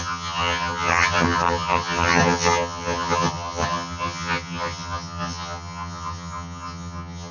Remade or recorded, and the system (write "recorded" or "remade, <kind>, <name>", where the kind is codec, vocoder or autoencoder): remade, vocoder, HiFi-GAN